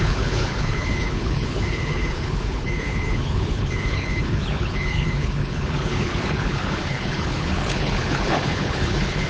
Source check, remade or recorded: remade